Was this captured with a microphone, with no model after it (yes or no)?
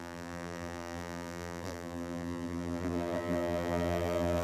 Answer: no